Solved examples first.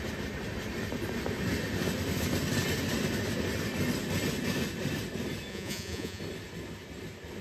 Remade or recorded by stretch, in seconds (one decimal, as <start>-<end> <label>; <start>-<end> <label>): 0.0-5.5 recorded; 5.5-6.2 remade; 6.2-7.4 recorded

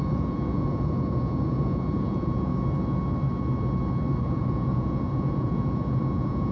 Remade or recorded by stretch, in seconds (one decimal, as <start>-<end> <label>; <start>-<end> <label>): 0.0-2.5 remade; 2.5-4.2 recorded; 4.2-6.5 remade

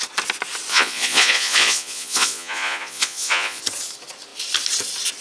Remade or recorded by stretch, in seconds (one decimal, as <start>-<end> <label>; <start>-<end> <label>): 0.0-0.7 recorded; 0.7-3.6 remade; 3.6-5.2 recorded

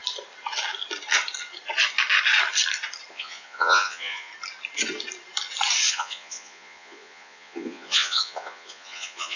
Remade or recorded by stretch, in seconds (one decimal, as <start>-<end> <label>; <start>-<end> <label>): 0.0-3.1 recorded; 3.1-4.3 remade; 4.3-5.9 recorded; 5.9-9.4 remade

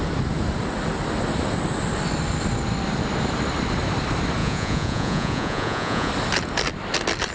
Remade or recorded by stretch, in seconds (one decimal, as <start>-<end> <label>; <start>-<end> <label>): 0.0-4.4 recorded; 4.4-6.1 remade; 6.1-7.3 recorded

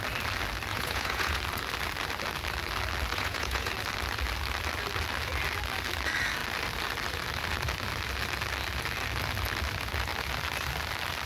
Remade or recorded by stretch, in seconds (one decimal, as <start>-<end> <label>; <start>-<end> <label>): 0.0-0.7 recorded; 0.7-1.4 remade; 1.4-3.1 recorded; 3.1-3.7 remade; 3.7-11.3 recorded

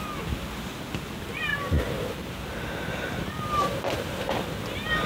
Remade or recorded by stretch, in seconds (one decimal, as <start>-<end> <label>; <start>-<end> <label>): 0.0-5.1 recorded